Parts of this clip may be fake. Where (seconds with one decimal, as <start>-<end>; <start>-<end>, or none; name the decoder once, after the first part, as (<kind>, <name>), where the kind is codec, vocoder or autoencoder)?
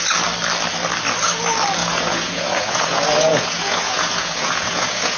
1.8-5.2 (vocoder, Vocos)